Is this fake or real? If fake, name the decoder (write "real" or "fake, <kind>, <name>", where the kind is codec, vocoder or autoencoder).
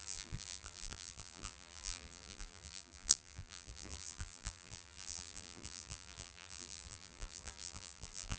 fake, vocoder, BigVGAN v2